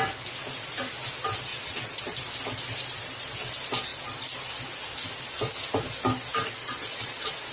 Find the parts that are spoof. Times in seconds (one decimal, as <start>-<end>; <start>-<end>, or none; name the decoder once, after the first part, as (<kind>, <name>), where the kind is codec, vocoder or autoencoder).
1.5-2.0 (vocoder, Vocos); 6.6-7.5